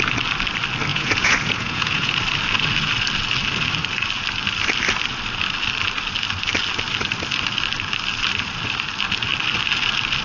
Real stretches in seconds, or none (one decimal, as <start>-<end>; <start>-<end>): 0.0-0.9; 2.1-10.2